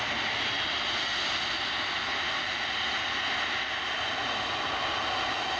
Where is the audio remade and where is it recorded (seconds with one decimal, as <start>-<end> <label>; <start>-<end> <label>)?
0.0-5.6 recorded